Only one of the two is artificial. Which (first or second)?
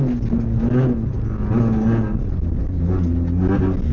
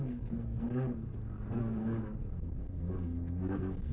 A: second